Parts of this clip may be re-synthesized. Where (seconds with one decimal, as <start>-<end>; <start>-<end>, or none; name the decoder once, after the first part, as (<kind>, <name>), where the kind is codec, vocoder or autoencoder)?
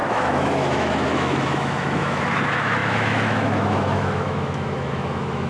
0.0-5.5 (autoencoder, DAC-VAE)